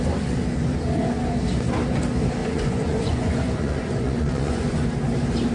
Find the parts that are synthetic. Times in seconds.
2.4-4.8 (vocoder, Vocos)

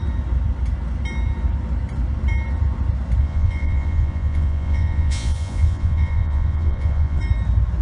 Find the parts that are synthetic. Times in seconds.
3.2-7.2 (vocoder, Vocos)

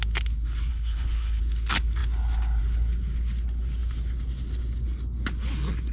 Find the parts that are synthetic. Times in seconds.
0.7-1.4 (codec, HILCodec)

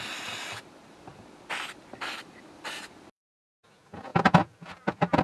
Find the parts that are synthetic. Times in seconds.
none

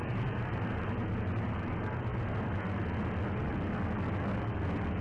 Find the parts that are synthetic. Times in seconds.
0.0-0.9 (vocoder, BigVGAN v2)

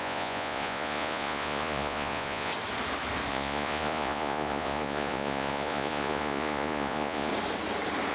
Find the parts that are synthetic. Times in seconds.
0.0-2.5 (vocoder, Vocos); 3.3-7.3

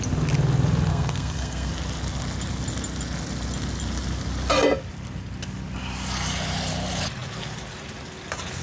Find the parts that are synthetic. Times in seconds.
0.9-1.7 (codec, SNAC)